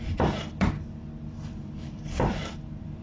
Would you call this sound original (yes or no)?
no